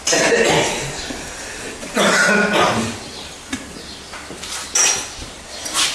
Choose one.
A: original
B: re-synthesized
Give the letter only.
A